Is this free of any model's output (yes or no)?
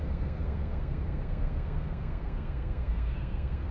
no